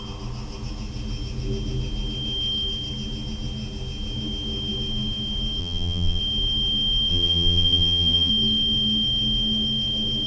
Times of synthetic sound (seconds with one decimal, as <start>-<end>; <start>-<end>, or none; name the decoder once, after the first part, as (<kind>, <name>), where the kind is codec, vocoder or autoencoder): 5.6-6.2 (vocoder, BigVGAN v2); 7.1-8.3